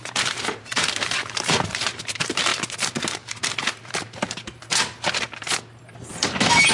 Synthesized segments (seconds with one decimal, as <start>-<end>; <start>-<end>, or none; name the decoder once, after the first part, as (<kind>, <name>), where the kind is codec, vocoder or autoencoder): 0.0-2.5 (vocoder, BigVGAN v2); 3.9-4.7; 6.1-6.7